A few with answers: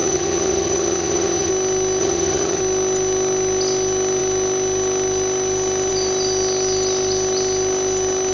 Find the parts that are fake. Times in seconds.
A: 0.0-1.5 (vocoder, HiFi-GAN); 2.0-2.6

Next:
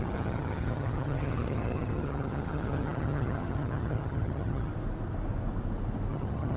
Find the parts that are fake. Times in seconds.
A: 0.0-4.7 (vocoder, HiFi-GAN); 6.1-6.6

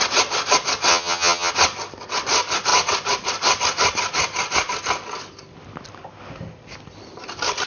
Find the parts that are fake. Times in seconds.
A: 0.9-1.5 (vocoder, HiFi-GAN)